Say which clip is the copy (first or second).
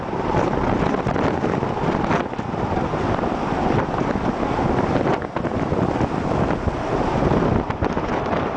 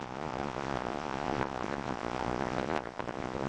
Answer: second